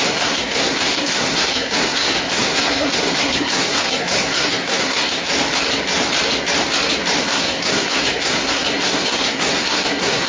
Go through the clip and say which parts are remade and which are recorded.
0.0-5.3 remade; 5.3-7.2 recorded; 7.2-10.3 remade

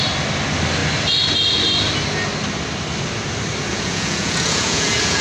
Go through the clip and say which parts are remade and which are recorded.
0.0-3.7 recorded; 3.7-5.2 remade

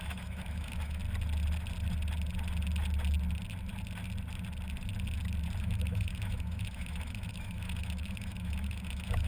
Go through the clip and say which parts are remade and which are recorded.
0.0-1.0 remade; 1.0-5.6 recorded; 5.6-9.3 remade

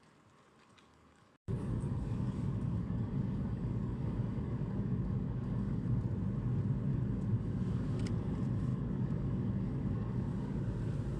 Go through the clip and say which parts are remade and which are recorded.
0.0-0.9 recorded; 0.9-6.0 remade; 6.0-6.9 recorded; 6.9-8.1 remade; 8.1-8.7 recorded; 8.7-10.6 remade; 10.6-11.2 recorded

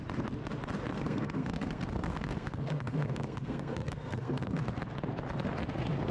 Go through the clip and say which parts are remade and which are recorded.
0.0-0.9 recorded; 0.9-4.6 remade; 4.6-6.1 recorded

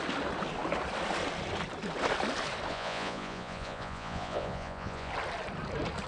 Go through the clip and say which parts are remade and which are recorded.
0.0-2.7 recorded; 2.7-5.1 remade; 5.1-6.1 recorded

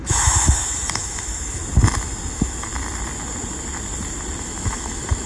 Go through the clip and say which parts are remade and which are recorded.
0.0-1.6 remade; 1.6-2.3 recorded; 2.3-2.7 remade; 2.7-4.4 recorded; 4.4-5.3 remade